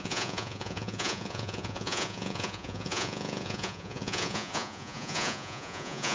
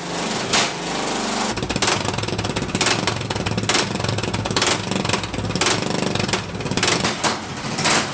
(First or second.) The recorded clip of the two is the second